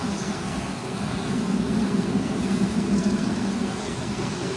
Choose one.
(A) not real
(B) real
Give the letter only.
A